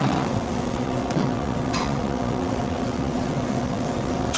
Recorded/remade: remade